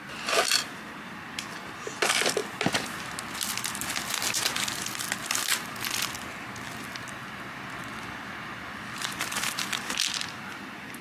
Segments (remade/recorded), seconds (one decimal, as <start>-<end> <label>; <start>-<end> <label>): 0.0-11.0 recorded